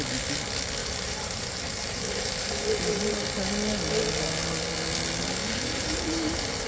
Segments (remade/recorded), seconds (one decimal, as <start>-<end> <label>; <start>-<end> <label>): 0.0-0.8 recorded; 0.8-3.0 remade; 3.0-5.4 recorded; 5.4-6.7 remade